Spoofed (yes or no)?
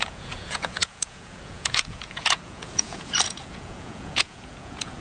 yes